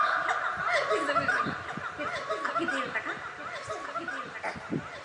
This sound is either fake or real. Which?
real